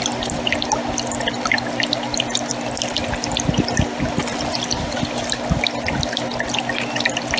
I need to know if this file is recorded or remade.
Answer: recorded